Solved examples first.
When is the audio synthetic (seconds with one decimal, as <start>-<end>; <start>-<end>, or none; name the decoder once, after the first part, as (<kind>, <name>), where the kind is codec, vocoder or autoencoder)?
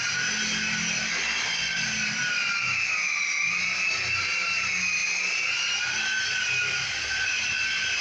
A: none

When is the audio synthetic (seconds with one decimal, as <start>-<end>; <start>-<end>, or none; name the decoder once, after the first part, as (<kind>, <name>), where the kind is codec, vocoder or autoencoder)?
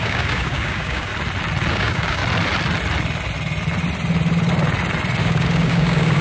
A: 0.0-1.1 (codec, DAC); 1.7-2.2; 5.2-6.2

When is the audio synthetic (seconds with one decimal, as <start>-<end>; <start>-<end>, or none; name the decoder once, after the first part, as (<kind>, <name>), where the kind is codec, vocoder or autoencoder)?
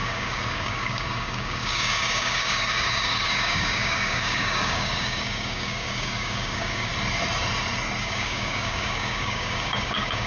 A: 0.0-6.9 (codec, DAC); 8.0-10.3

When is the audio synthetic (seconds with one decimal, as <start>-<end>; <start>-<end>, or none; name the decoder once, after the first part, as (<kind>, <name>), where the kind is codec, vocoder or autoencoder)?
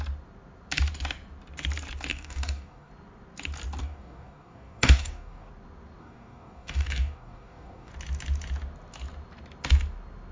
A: 2.1-2.9 (codec, DAC); 3.8-5.5; 6.0-7.9